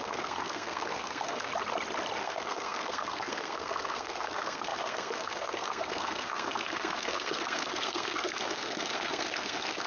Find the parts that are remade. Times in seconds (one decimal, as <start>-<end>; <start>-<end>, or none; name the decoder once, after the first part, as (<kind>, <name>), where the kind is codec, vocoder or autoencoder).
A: 0.0-1.5 (codec, SNAC); 2.2-9.9